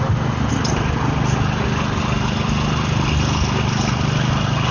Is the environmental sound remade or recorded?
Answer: recorded